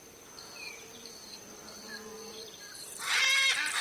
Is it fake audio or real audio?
fake